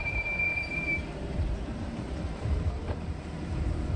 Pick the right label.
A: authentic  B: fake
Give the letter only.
B